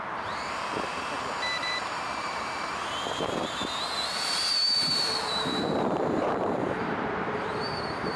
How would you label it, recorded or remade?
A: remade